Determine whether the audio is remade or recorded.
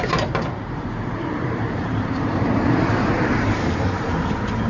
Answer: remade